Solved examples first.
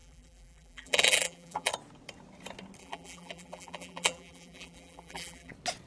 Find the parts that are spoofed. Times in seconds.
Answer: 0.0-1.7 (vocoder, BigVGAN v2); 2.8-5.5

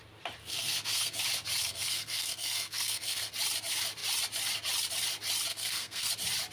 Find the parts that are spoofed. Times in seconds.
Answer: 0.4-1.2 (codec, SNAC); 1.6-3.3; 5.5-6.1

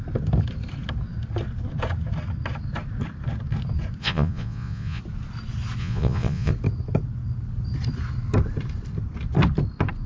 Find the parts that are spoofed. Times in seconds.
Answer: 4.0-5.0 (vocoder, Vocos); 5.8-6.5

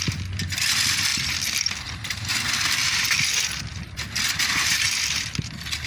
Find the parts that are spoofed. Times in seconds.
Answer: 0.0-5.9 (vocoder, BigVGAN v2)